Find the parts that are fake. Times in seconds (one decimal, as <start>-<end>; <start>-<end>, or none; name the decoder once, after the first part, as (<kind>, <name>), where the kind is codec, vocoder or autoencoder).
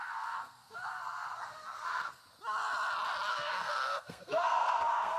0.0-2.2 (codec, SNAC); 3.3-5.2